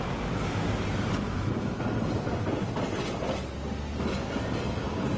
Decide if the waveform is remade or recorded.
recorded